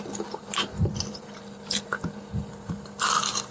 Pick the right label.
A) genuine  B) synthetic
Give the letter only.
A